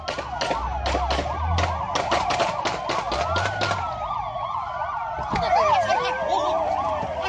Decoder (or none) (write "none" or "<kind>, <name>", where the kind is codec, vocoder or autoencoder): none